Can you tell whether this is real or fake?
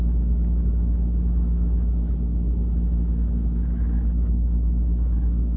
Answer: fake